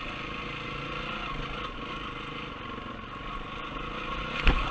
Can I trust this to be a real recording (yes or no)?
yes